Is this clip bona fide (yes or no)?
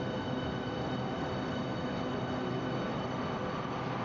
yes